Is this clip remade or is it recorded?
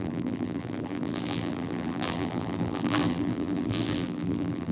remade